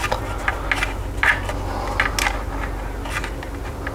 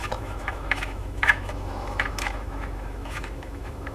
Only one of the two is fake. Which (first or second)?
second